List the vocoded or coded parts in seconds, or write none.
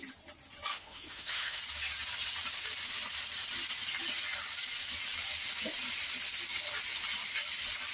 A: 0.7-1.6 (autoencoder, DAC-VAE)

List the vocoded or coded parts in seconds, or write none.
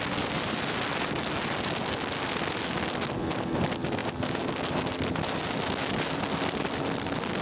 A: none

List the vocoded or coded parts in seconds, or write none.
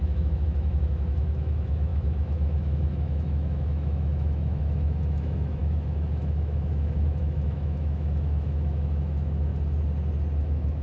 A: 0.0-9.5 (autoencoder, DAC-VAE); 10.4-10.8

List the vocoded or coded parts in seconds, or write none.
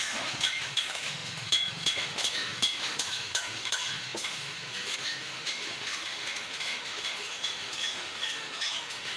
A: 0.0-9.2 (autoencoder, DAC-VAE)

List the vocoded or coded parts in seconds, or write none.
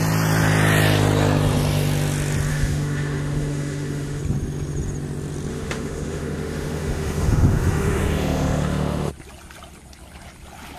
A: 2.5-4.2 (autoencoder, DAC-VAE); 5.5-9.1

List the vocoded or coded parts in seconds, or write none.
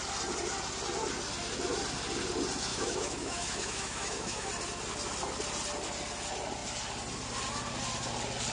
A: 2.7-4.5 (autoencoder, DAC-VAE)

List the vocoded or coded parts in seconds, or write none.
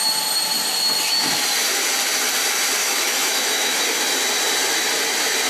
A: 2.8-3.8 (autoencoder, DAC-VAE)